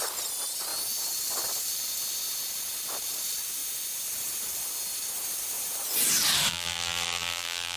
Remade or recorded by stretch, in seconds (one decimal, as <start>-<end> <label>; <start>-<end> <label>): 0.0-6.5 recorded; 6.5-7.8 remade